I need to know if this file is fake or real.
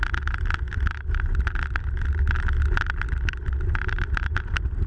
real